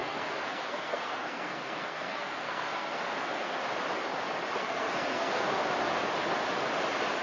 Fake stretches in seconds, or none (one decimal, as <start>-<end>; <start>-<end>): 0.0-3.6; 4.6-5.6